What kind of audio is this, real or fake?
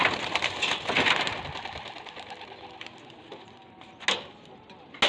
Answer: real